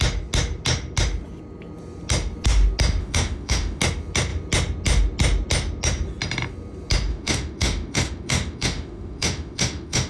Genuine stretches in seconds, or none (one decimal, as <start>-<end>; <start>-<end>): 0.0-3.0; 3.8-7.1